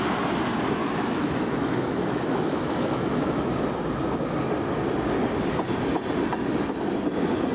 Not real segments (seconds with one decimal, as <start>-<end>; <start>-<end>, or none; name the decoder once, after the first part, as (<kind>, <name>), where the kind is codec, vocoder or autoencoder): 0.8-3.5 (autoencoder, DAC-VAE)